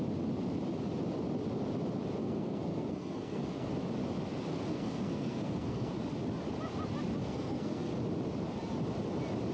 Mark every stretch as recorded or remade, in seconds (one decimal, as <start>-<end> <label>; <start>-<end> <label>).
0.0-2.2 recorded; 2.2-3.7 remade; 3.7-4.7 recorded; 4.7-5.9 remade; 5.9-7.2 recorded; 7.2-7.9 remade; 7.9-9.5 recorded